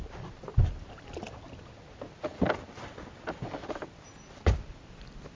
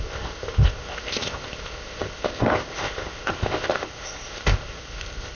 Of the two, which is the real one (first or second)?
first